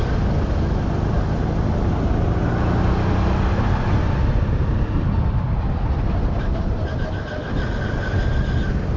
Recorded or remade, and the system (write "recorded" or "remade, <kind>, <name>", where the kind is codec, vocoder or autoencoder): recorded